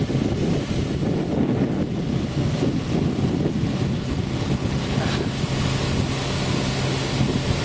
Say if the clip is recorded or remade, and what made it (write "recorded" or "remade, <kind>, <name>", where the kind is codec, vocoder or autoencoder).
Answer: recorded